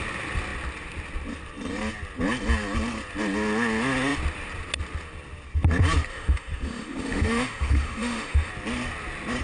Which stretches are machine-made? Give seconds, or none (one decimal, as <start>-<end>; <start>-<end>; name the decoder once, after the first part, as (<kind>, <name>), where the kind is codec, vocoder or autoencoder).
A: 6.1-8.5 (autoencoder, DAC-VAE)